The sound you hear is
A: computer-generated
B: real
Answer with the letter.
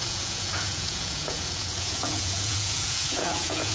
A